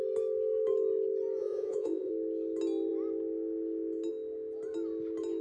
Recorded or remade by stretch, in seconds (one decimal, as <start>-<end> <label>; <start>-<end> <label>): 0.0-1.4 recorded; 1.4-2.1 remade; 2.1-5.4 recorded